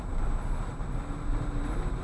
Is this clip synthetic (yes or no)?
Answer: no